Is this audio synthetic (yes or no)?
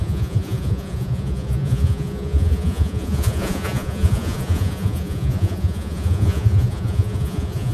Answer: yes